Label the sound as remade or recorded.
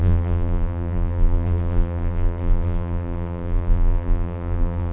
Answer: remade